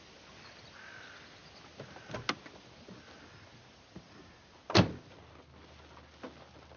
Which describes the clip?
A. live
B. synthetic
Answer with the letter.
A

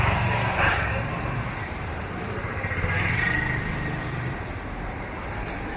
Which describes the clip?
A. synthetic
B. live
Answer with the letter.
A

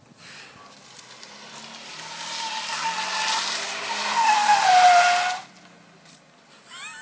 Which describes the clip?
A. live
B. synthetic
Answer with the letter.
A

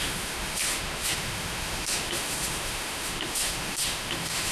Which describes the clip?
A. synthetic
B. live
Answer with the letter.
A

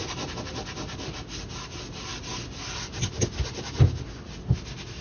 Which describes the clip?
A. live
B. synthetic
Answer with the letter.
A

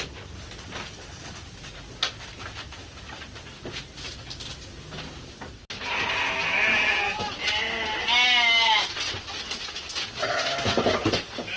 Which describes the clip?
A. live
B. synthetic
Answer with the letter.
A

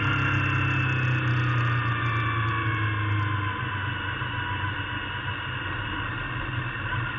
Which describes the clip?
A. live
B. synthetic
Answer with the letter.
A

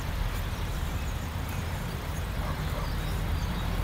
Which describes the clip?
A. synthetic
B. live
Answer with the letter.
A